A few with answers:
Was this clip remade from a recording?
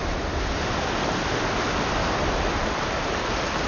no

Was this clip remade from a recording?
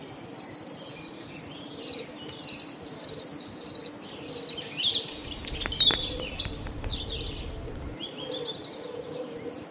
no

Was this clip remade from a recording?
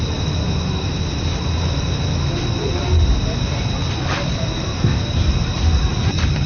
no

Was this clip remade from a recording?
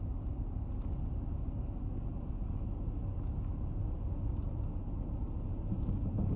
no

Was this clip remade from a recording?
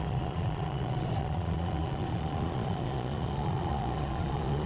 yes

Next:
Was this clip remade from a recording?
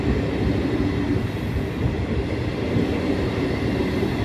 no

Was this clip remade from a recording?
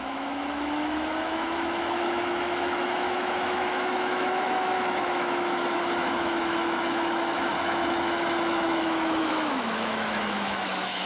yes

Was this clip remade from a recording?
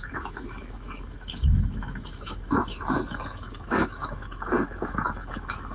yes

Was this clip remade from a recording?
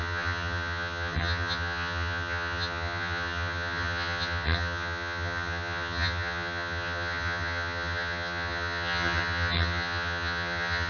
yes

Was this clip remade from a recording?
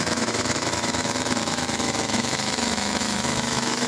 yes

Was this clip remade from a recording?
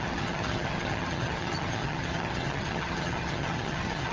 yes